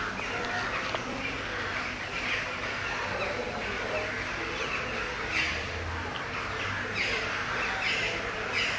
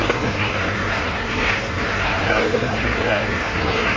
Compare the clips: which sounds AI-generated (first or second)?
second